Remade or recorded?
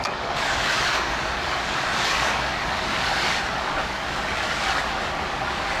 remade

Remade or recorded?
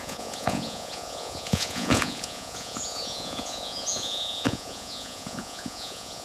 remade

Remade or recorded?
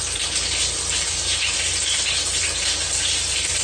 recorded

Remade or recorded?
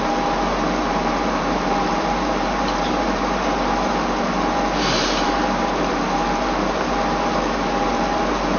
remade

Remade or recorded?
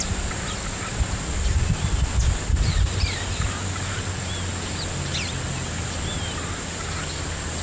recorded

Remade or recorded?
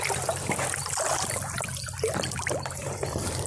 remade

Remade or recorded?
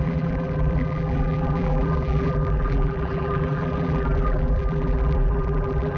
remade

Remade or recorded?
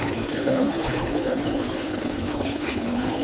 remade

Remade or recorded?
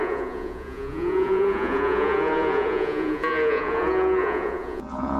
remade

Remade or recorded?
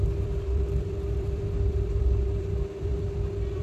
remade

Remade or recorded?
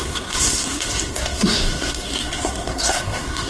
remade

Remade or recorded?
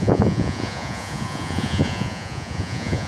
remade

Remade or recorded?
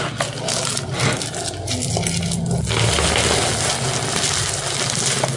recorded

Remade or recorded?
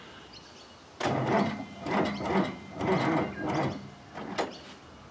recorded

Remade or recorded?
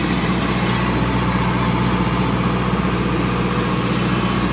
recorded